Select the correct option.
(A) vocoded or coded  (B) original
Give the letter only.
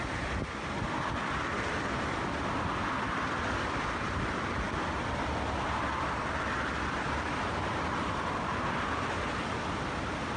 B